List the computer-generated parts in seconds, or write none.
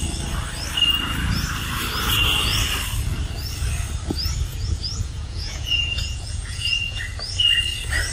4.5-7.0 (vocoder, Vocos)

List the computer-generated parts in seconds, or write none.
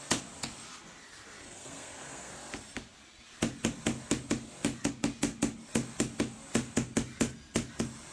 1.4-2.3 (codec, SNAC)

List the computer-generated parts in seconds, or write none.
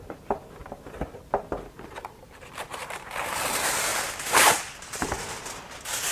none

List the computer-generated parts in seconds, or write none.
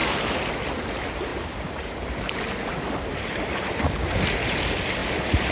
0.0-0.5 (vocoder, BigVGAN v2); 1.3-4.6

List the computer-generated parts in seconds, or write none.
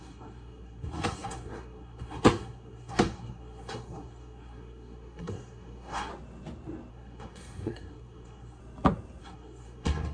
0.0-6.1 (codec, SNAC); 6.9-8.6; 9.2-10.1